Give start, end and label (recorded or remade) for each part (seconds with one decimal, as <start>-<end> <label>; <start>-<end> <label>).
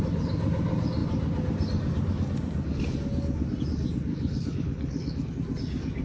0.0-4.1 recorded; 4.1-5.3 remade; 5.3-6.0 recorded